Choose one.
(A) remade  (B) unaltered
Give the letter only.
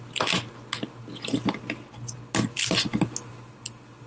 B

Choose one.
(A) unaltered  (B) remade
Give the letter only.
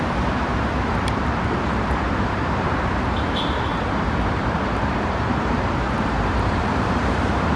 B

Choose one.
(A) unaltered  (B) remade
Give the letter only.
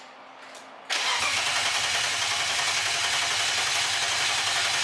A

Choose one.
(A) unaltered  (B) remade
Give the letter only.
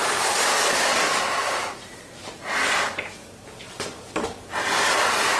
A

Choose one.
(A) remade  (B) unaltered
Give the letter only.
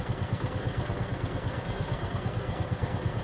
A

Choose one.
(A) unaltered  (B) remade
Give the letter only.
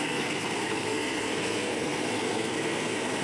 B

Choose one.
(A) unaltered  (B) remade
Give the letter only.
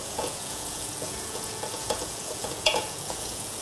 B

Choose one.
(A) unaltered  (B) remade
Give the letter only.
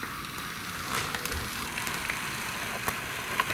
A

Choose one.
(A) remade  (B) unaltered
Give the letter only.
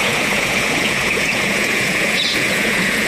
A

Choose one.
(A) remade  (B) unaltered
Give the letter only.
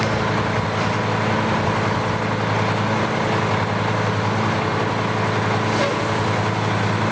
B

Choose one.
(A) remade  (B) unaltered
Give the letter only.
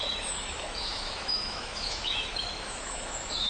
A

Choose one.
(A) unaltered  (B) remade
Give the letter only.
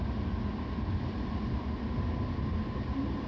A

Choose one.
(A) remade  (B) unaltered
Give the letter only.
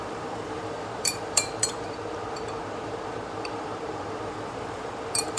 A